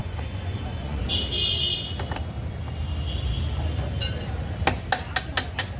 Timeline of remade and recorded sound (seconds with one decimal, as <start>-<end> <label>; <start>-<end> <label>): 0.0-1.0 remade; 1.0-5.8 recorded

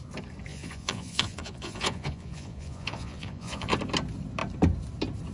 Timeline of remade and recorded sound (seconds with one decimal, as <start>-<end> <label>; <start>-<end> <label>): 0.0-0.5 recorded; 0.5-3.7 remade; 3.7-5.3 recorded

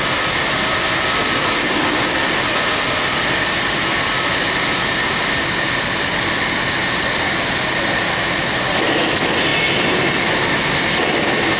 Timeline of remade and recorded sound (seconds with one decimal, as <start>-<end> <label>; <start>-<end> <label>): 0.0-11.6 recorded

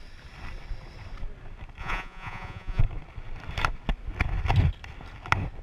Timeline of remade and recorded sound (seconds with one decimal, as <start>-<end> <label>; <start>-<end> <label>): 0.0-1.8 recorded; 1.8-2.8 remade; 2.8-5.6 recorded

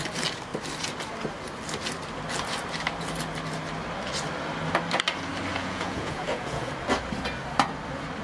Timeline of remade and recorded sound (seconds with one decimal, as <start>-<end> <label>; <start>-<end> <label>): 0.0-5.5 recorded; 5.5-6.7 remade; 6.7-8.2 recorded

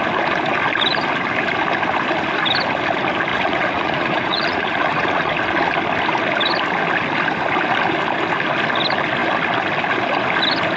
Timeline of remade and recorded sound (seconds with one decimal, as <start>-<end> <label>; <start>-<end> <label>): 0.0-3.3 recorded; 3.3-5.3 remade; 5.3-10.8 recorded

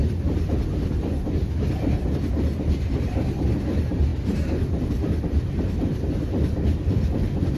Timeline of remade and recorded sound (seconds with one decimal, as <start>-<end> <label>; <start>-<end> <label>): 0.0-7.6 recorded